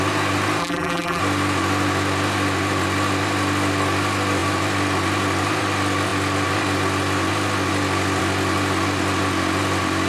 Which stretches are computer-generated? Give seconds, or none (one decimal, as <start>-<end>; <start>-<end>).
0.6-1.2